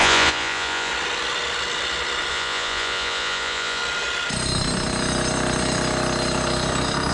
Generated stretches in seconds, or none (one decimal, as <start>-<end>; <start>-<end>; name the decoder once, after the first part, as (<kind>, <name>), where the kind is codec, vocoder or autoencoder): 0.0-0.9 (vocoder, Vocos); 2.3-3.8